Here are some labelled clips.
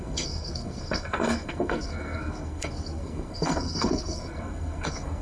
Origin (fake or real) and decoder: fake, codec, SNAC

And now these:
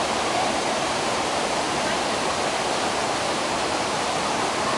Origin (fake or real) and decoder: fake, vocoder, BigVGAN v2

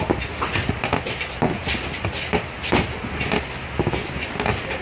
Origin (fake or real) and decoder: real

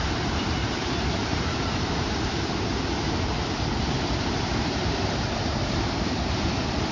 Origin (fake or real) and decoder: fake, vocoder, BigVGAN v2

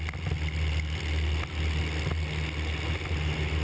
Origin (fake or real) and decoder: real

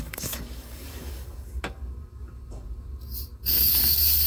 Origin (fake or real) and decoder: fake, codec, DAC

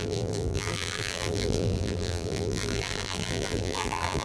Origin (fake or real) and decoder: fake, vocoder, BigVGAN v2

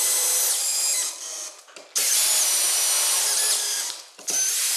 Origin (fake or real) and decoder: real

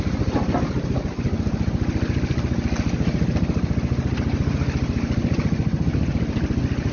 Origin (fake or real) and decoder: real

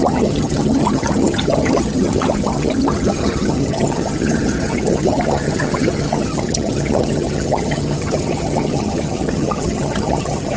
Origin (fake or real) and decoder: fake, vocoder, HiFi-GAN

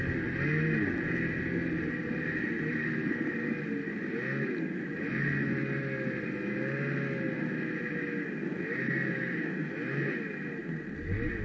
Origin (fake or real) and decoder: real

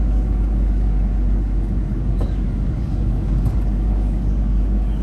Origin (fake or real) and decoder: fake, codec, DAC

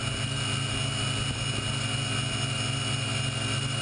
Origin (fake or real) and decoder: real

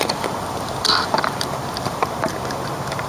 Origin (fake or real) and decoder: fake, vocoder, BigVGAN v2